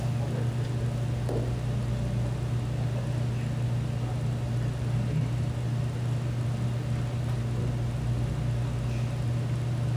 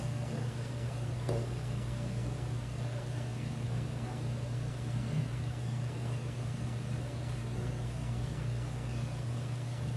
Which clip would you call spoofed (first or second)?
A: second